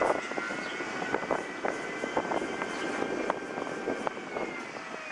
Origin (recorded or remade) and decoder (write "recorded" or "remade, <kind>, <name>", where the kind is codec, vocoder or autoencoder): recorded